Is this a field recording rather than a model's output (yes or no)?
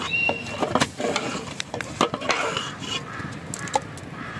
yes